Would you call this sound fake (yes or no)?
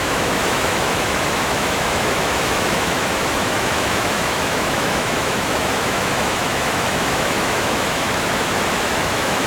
yes